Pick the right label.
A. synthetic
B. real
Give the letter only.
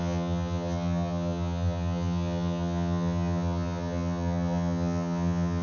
A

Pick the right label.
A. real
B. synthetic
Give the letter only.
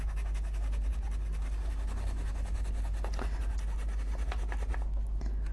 A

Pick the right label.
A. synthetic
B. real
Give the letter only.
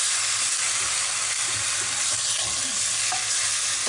B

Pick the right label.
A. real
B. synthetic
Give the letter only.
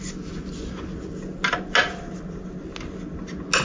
A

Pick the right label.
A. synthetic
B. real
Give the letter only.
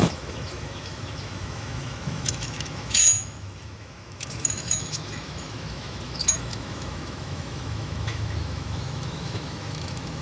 A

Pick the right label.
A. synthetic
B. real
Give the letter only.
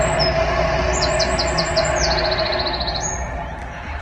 B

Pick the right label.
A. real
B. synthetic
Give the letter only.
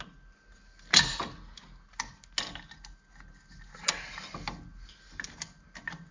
A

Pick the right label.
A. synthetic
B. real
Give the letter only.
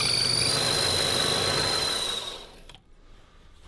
B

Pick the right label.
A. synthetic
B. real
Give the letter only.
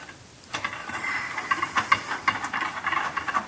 A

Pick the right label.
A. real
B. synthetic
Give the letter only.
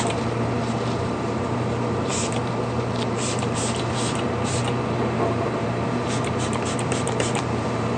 B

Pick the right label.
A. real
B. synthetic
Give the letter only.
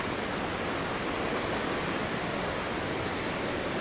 A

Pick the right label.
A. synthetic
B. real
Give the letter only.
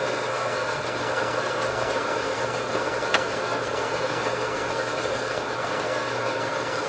A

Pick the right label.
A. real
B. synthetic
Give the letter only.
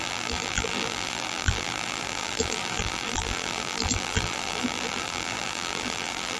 B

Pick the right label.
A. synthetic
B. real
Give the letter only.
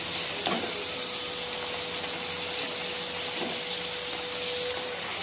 B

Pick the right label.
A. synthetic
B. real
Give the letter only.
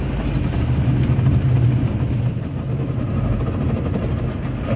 B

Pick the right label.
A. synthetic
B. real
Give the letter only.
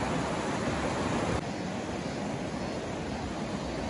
B